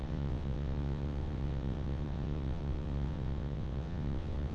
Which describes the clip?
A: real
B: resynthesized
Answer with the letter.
B